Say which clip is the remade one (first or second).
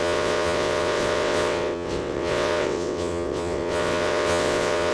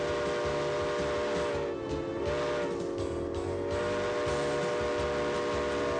first